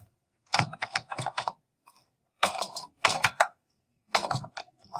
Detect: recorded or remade remade